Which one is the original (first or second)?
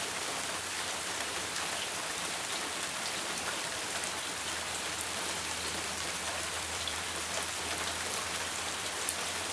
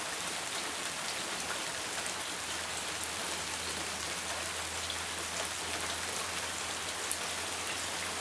second